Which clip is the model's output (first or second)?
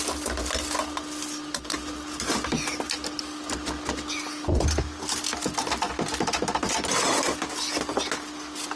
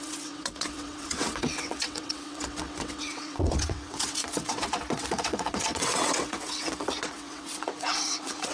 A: second